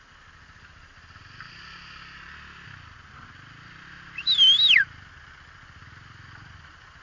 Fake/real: real